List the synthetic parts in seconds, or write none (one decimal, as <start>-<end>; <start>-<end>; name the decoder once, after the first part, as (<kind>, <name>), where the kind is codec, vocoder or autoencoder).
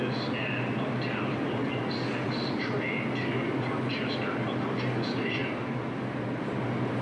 none